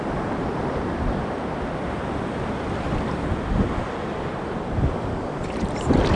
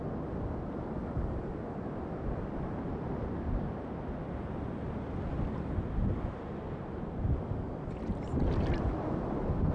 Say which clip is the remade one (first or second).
first